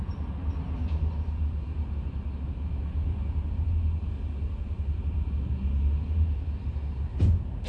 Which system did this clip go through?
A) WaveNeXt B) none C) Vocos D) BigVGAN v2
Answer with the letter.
B